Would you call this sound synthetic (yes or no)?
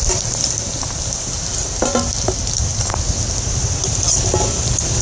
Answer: no